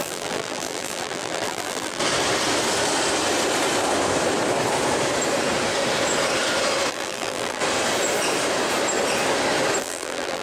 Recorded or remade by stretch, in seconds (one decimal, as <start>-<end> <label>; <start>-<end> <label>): 0.0-2.0 remade; 2.0-6.9 recorded; 6.9-7.6 remade; 7.6-9.8 recorded; 9.8-10.4 remade